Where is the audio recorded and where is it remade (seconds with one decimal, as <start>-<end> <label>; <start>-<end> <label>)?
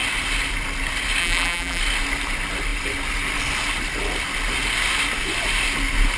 0.0-1.2 recorded; 1.2-1.8 remade; 1.8-6.2 recorded